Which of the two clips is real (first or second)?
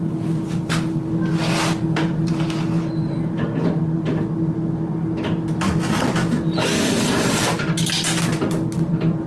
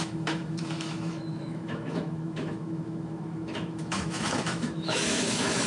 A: first